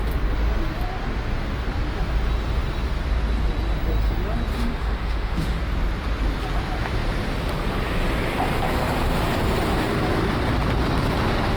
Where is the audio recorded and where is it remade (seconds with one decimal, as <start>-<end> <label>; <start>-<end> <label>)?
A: 0.0-4.5 recorded; 4.5-5.6 remade; 5.6-11.6 recorded